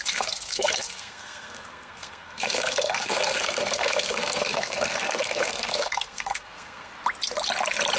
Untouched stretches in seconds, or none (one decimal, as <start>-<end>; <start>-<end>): 6.9-8.0